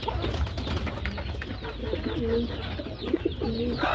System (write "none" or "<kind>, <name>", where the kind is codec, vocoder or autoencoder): none